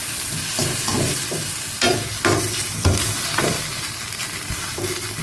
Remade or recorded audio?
remade